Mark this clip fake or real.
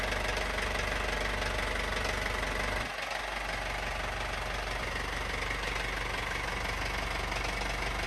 real